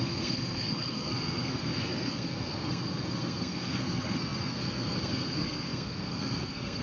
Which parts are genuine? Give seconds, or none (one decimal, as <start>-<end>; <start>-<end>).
none